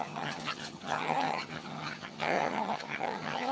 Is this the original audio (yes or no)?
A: no